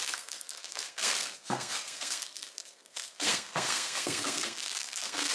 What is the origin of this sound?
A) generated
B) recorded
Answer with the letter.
A